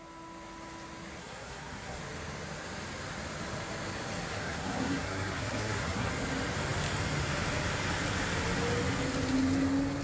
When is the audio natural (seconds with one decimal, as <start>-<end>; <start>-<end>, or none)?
0.0-1.2; 2.0-4.3; 6.1-10.0